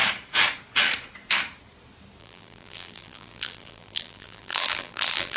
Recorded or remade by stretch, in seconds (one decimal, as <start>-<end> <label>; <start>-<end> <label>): 0.0-2.2 recorded; 2.2-5.4 remade